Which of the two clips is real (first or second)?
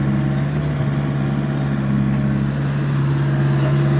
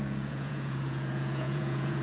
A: first